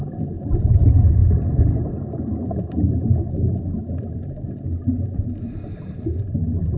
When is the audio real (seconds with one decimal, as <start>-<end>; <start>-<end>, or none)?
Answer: 0.0-6.8

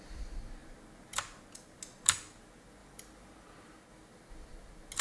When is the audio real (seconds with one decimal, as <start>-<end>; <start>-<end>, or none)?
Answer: 0.0-5.0

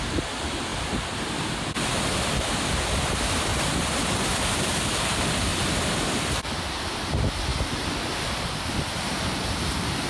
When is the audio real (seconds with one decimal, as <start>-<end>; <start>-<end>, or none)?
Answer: 0.0-3.5; 4.7-5.5; 6.7-10.1

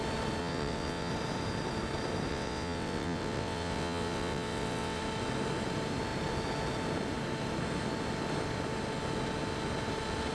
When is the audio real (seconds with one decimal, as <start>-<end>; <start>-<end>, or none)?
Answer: 0.0-0.4; 1.1-2.3; 5.0-10.3